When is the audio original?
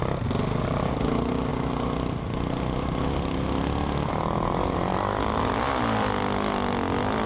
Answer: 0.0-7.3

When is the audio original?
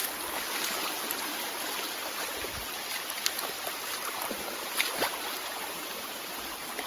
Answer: 0.0-4.1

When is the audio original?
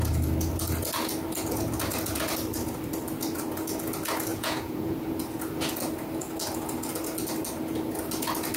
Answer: 0.0-4.3; 5.0-8.6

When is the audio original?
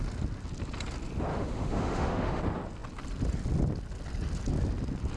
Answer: 0.0-1.3; 2.4-5.2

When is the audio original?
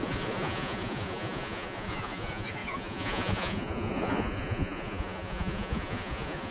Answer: none